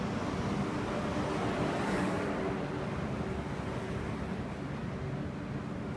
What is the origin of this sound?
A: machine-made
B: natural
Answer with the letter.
B